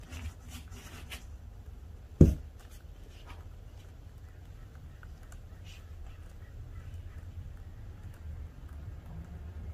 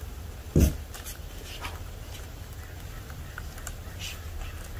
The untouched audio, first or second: second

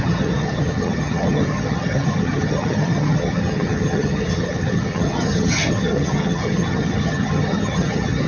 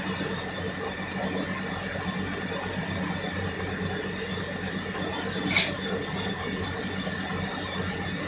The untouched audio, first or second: second